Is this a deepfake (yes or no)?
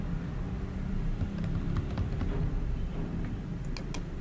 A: no